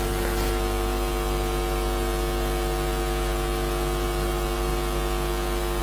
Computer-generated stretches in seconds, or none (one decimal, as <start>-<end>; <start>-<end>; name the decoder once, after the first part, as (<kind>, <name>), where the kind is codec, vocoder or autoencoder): none